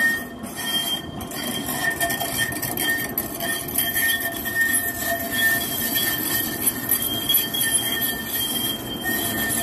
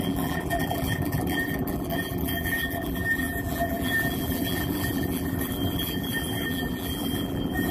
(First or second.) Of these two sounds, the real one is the first